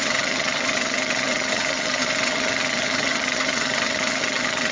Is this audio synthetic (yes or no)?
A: yes